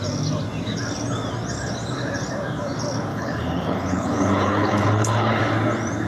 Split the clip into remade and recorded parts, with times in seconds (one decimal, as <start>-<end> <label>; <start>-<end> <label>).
0.0-3.1 recorded; 3.1-5.4 remade; 5.4-6.1 recorded